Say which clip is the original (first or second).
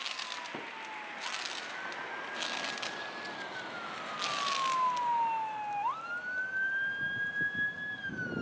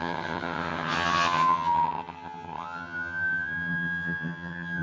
first